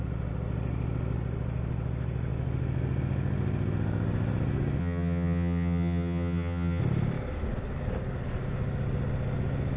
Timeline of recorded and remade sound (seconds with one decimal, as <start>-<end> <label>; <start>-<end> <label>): 0.0-4.8 recorded; 4.8-6.8 remade; 6.8-9.8 recorded